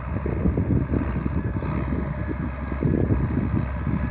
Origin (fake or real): real